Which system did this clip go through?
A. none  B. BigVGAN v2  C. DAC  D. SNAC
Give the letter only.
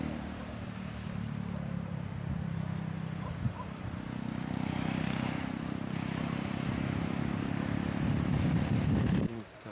A